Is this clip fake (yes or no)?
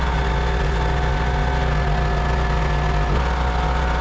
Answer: no